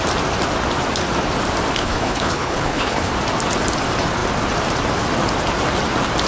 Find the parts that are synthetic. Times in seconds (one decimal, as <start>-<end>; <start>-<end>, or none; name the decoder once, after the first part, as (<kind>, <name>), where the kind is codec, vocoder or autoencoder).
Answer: 1.8-3.1 (codec, HILCodec)